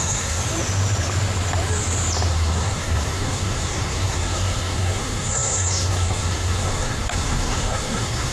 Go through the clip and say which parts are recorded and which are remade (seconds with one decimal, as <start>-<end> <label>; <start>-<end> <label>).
0.0-0.4 remade; 0.4-2.3 recorded; 2.3-8.3 remade